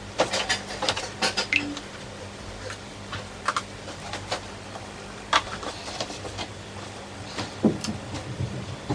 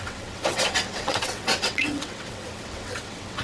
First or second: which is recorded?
first